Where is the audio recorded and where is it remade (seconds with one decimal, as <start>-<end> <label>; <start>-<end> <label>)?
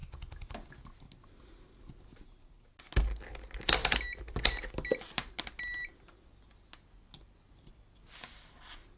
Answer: 0.0-9.0 recorded